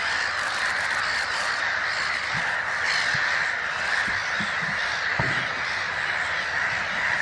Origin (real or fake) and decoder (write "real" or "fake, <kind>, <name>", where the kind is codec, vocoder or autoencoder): real